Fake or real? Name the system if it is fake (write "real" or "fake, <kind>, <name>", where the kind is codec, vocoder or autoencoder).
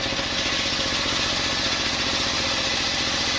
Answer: real